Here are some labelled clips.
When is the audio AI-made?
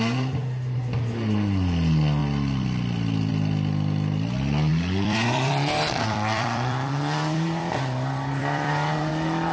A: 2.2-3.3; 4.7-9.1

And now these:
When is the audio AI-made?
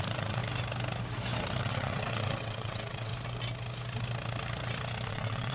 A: 0.0-0.4; 1.6-3.1; 5.1-5.5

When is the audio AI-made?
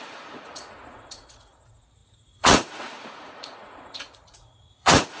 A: 0.0-5.2